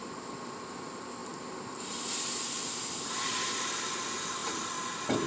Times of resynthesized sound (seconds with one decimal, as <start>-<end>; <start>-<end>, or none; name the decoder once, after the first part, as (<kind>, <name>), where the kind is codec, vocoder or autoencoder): 1.2-3.5 (vocoder, BigVGAN v2); 4.4-5.3